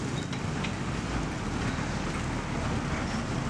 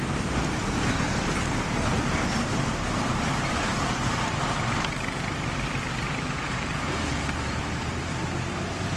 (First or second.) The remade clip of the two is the second